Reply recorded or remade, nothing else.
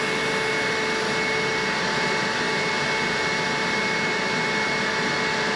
recorded